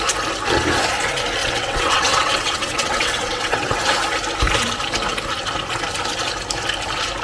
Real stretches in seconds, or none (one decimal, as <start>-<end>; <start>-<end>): 0.0-1.4; 3.7-7.2